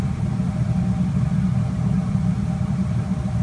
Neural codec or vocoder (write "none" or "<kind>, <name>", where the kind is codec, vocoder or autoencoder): none